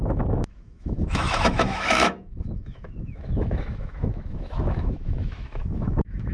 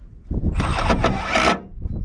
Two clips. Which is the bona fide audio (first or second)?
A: second